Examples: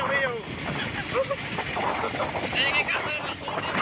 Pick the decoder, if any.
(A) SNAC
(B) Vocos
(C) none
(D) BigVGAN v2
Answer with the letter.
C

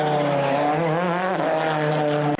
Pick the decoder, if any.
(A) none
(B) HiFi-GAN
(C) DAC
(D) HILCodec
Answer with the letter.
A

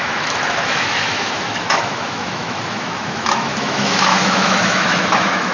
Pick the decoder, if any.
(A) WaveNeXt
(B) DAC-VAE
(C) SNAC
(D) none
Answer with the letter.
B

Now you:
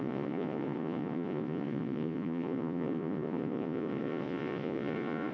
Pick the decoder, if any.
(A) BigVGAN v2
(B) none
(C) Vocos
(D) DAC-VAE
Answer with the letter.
C